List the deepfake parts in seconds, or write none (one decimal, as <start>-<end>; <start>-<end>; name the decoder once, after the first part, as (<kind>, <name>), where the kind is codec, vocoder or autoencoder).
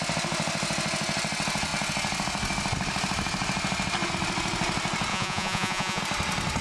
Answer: 5.1-6.0 (vocoder, Vocos)